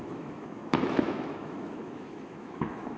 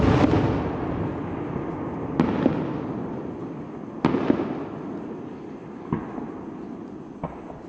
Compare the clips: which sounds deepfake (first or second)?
first